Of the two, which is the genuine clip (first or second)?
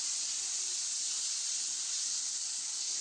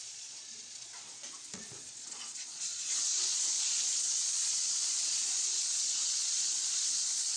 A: first